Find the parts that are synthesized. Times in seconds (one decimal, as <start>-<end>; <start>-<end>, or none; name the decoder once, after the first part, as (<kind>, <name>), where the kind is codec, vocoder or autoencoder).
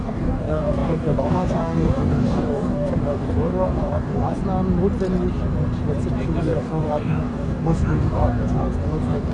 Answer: 0.0-4.4 (codec, DAC); 6.4-9.3